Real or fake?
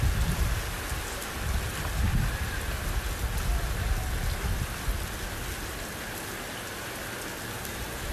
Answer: real